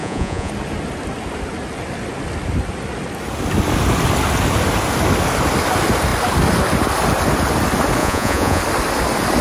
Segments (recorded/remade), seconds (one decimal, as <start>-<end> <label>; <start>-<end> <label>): 0.0-0.5 remade; 0.5-8.0 recorded; 8.0-8.6 remade; 8.6-9.4 recorded